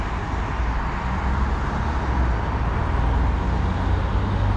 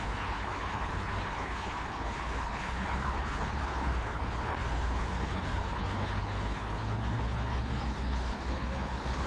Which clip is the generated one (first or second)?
second